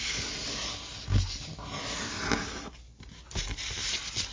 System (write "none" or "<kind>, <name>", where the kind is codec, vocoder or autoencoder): none